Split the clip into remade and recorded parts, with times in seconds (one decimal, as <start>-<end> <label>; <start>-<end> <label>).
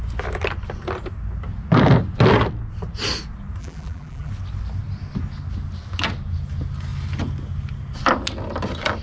0.0-3.6 recorded; 3.6-4.3 remade; 4.3-9.0 recorded